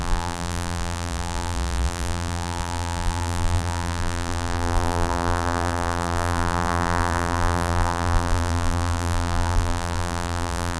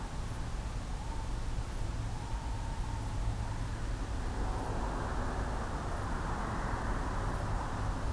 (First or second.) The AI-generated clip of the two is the first